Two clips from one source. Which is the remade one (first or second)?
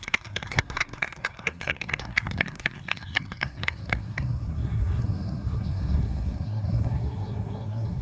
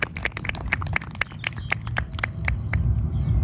first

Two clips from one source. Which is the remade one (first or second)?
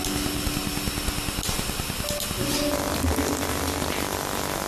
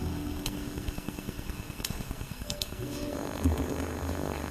second